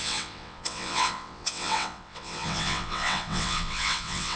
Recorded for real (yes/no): no